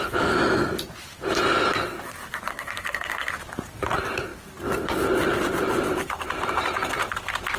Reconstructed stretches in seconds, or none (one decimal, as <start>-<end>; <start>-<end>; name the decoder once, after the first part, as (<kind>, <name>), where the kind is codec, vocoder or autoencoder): 2.5-3.3 (codec, SNAC)